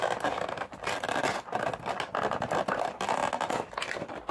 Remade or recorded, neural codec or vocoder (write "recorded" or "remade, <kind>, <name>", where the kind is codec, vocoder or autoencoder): recorded